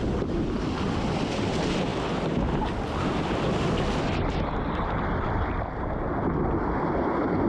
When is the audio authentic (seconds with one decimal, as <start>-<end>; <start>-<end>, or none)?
0.0-7.5